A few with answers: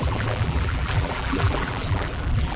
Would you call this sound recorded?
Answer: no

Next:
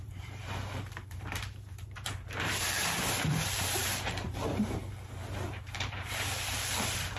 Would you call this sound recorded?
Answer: no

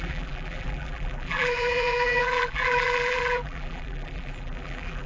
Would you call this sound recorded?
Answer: no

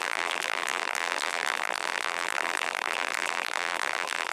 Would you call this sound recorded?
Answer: no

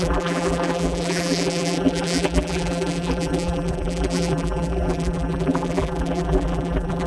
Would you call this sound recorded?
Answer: no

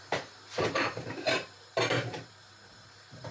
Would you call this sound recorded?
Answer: no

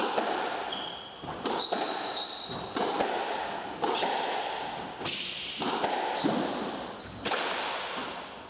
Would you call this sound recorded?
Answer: yes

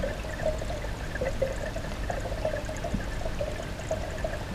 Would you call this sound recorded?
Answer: yes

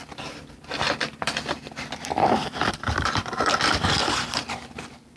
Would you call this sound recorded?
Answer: no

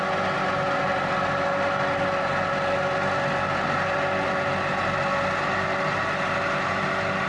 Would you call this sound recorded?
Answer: yes